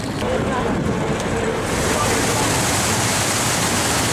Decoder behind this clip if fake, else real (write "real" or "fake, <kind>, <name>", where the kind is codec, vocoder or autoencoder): real